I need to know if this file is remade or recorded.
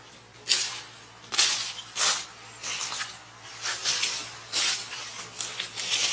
recorded